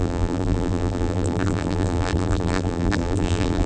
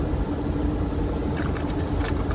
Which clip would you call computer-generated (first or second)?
first